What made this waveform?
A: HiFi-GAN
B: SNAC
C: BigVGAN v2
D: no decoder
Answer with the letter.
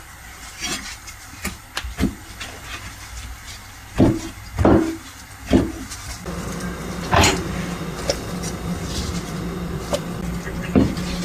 D